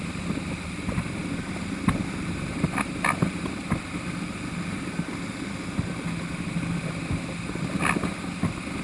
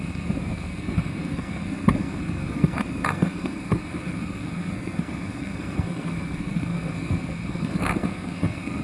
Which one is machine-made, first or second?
second